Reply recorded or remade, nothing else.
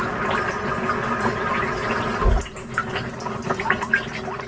recorded